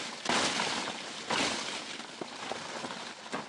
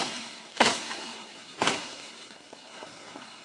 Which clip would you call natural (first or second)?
first